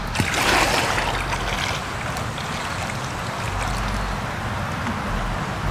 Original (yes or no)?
yes